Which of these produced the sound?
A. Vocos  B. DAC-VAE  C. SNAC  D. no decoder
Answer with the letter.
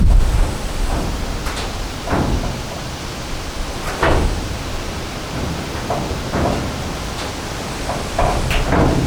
D